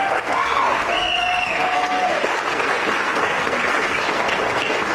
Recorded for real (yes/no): no